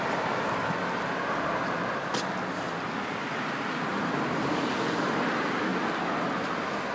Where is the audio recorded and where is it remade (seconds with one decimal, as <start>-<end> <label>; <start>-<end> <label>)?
0.0-3.9 recorded; 3.9-5.3 remade; 5.3-6.9 recorded